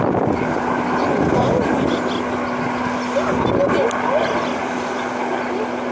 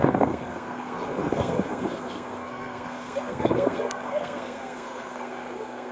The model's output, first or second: second